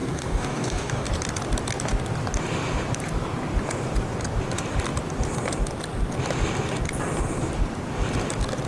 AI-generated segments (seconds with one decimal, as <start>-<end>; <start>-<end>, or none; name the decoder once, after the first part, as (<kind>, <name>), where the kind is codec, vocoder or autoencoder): 0.0-1.1 (codec, DAC)